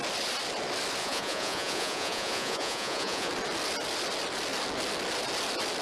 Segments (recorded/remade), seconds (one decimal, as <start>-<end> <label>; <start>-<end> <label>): 0.0-1.0 recorded; 1.0-3.3 remade; 3.3-5.8 recorded

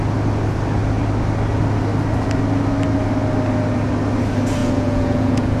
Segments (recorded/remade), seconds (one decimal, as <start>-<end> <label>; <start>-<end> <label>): 0.0-4.6 recorded; 4.6-5.6 remade

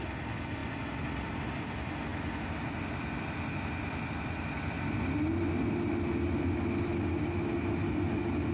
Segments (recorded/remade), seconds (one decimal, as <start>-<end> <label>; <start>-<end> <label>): 0.0-8.5 recorded

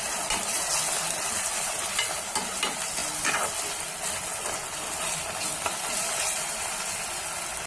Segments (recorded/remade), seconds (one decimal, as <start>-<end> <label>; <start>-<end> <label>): 0.0-7.7 recorded

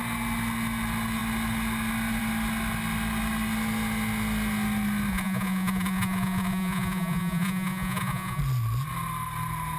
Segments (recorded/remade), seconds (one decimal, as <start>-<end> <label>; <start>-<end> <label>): 0.0-5.1 recorded; 5.1-8.4 remade; 8.4-9.8 recorded

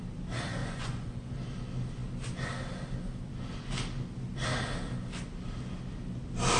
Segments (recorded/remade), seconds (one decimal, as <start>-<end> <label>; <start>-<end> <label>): 0.0-0.6 recorded; 0.6-1.3 remade; 1.3-6.6 recorded

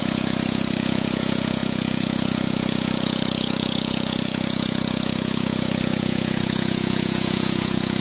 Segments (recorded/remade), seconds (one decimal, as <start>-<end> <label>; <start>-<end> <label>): 0.0-8.0 remade